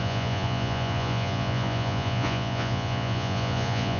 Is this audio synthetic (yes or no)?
yes